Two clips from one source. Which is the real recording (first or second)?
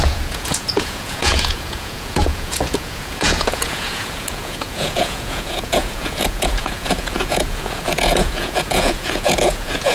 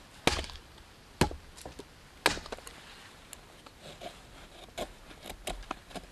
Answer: second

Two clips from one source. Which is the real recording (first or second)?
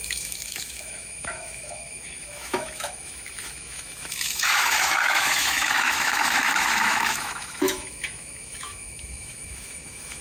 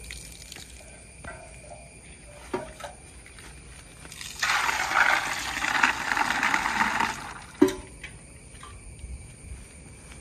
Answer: second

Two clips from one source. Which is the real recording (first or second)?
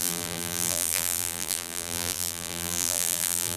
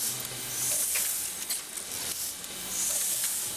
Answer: second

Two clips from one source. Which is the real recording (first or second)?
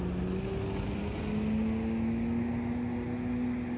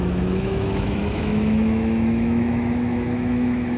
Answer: first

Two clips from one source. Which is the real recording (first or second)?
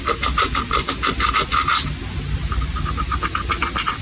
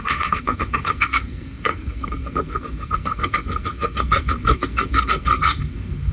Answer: first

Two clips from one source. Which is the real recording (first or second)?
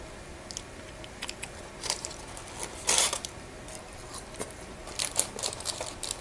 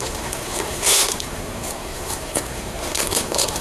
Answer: first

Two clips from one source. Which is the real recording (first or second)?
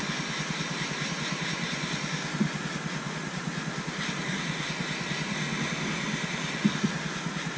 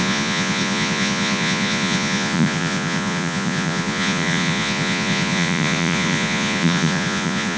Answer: first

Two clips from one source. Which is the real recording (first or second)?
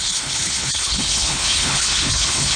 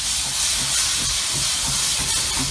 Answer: second